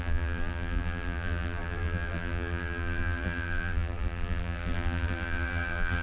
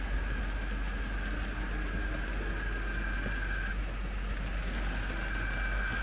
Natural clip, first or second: second